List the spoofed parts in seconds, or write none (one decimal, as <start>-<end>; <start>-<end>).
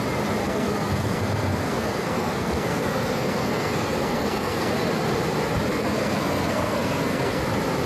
0.4-4.7; 5.7-7.4